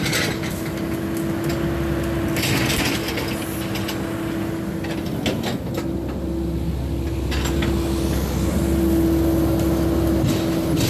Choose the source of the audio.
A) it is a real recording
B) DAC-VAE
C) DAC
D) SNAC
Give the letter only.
A